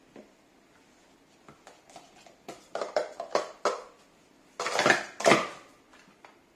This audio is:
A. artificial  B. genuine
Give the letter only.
B